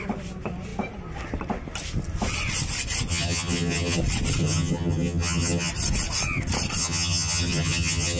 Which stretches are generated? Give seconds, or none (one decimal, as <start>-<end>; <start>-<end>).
3.1-4.0; 4.4-5.7; 6.8-8.2